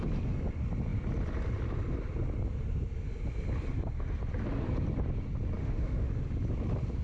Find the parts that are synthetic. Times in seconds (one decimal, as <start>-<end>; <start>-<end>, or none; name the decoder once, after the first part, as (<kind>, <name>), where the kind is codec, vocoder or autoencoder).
5.6-6.1 (autoencoder, DAC-VAE)